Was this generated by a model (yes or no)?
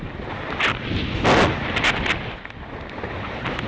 no